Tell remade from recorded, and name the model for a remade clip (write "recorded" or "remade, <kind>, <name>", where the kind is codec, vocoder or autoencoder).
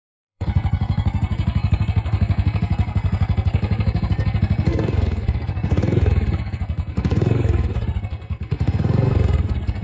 remade, codec, SNAC